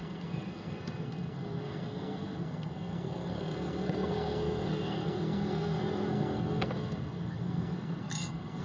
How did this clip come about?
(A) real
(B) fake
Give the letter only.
B